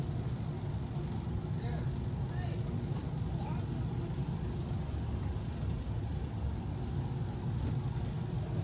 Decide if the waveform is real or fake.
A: real